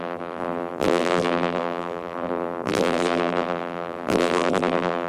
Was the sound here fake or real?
fake